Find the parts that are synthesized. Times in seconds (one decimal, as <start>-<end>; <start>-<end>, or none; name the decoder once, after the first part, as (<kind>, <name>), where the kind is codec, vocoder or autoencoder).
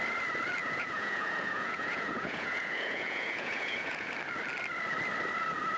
0.6-4.1 (vocoder, Vocos)